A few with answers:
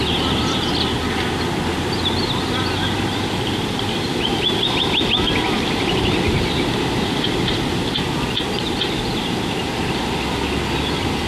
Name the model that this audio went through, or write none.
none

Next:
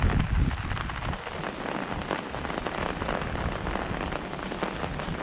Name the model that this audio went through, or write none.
none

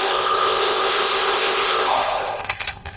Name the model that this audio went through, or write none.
codec, ZipCodec